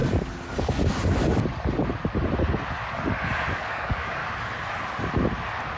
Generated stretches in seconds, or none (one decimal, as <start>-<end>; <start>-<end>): 3.5-4.2